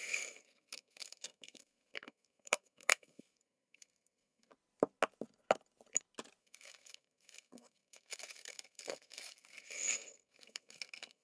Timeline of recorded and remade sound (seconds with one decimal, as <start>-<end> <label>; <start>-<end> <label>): 0.0-4.5 remade; 4.5-6.4 recorded; 6.4-11.2 remade